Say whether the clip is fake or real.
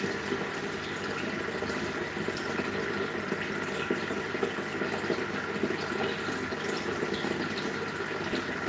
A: real